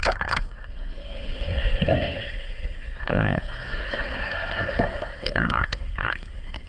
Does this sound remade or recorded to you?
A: remade